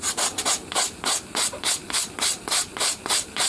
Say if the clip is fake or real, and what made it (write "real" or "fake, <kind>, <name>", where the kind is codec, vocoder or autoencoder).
fake, vocoder, BigVGAN v2